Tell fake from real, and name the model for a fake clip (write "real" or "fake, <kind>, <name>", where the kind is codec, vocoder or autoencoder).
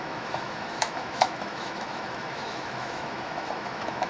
fake, autoencoder, DAC-VAE